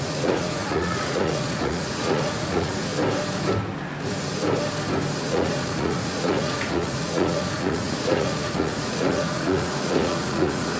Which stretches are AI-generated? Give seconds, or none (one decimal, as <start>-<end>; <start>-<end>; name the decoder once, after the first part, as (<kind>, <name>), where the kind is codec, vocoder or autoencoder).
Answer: 0.0-2.9 (vocoder, Vocos); 5.2-10.8

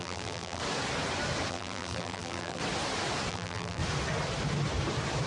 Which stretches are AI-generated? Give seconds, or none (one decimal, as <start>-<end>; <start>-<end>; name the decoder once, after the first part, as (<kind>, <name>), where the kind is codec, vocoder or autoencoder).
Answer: 0.0-0.6 (vocoder, BigVGAN v2); 1.5-2.6; 3.3-3.8

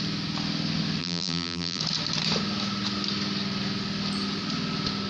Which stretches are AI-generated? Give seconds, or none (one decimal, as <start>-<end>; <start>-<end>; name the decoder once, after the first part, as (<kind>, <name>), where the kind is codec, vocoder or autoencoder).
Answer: 1.0-1.8 (vocoder, BigVGAN v2)